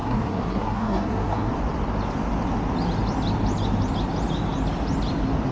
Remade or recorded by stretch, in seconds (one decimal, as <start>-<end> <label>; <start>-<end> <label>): 0.0-1.5 remade; 1.5-5.5 recorded